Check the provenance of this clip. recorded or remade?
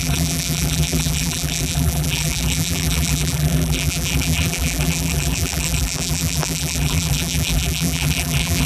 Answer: remade